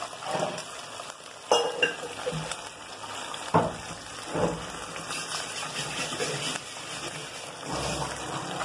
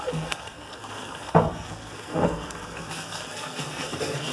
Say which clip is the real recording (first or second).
first